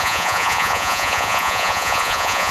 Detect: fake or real fake